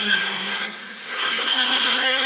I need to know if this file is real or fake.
fake